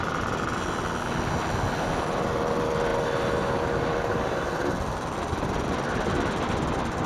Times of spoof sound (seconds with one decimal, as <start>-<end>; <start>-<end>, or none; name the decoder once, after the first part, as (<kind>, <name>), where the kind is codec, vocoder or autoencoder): none